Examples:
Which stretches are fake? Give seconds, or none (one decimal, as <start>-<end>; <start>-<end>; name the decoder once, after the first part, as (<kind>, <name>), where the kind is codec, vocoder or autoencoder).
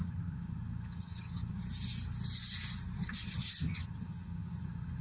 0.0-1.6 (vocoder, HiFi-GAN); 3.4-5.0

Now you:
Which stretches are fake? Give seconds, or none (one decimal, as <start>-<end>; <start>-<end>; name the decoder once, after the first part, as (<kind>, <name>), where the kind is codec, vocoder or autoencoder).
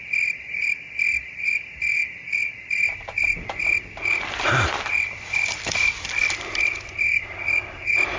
none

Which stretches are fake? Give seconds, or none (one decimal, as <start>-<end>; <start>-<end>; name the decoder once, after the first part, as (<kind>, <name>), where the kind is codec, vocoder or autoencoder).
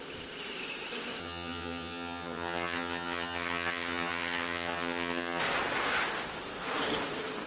1.2-5.4 (vocoder, HiFi-GAN)